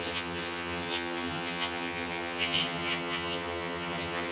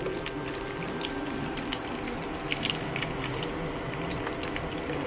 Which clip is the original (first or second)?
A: second